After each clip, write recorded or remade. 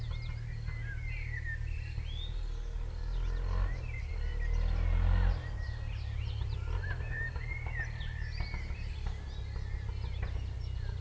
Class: recorded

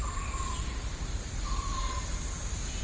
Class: recorded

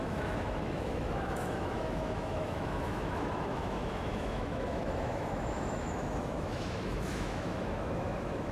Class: remade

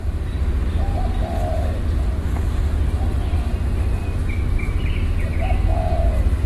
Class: recorded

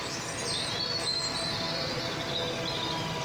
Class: recorded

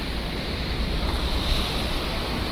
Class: recorded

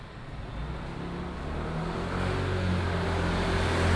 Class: recorded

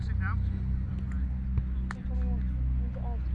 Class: recorded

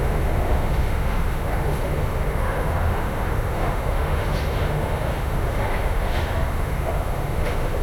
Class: remade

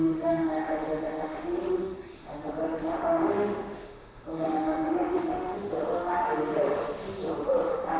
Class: remade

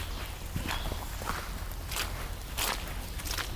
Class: recorded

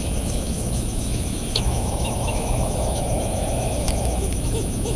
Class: remade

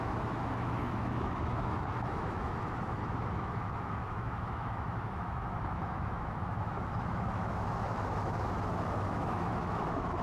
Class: remade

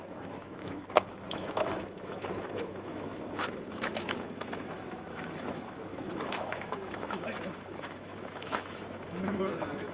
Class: remade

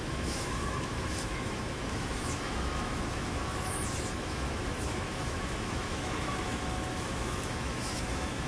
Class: remade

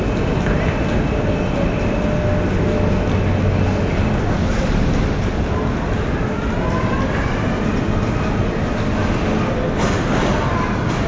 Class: recorded